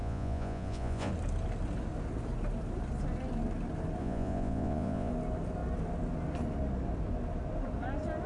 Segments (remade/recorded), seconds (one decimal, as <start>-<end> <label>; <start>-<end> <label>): 0.0-1.1 remade; 1.1-4.0 recorded; 4.0-5.1 remade; 5.1-8.3 recorded